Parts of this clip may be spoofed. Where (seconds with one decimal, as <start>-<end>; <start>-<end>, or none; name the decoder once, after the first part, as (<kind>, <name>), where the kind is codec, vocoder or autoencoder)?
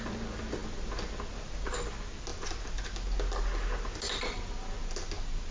none